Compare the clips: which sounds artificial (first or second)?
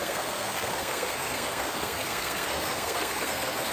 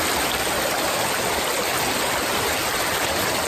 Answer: first